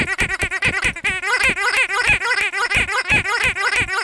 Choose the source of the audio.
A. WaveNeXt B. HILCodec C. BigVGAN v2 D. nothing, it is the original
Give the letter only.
D